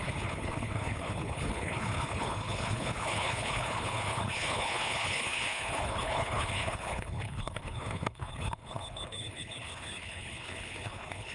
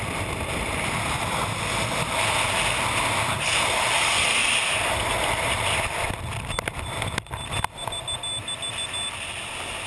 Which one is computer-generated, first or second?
first